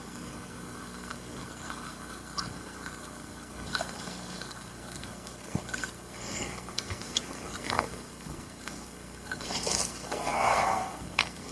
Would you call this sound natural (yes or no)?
no